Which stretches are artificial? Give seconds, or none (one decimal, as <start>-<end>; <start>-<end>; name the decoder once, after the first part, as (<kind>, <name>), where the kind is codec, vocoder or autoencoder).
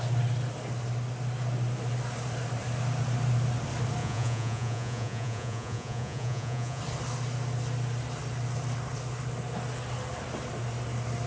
4.0-6.8 (vocoder, Vocos)